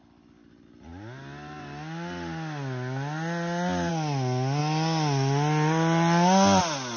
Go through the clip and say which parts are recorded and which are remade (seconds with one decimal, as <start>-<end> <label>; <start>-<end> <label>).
0.0-7.0 recorded